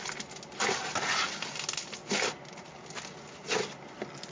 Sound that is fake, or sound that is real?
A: real